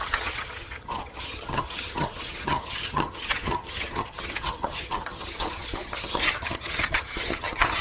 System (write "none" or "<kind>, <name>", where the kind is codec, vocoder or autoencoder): vocoder, HiFi-GAN